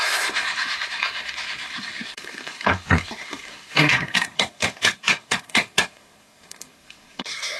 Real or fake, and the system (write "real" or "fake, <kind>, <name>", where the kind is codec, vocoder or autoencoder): fake, codec, SNAC